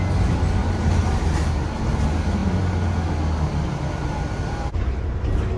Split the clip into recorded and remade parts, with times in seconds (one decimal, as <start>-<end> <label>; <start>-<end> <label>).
0.0-0.6 recorded; 0.6-1.2 remade; 1.2-5.6 recorded